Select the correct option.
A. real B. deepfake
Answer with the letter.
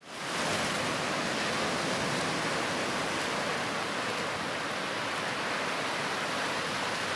A